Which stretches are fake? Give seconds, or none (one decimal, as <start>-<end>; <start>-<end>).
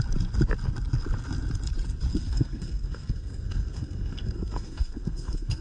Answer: 2.1-5.6